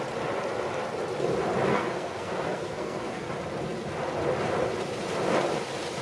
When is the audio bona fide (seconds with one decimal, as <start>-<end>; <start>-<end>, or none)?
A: 0.0-1.7; 3.3-6.0